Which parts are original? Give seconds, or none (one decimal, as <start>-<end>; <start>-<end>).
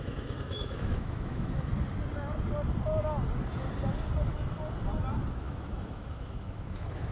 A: 1.7-5.3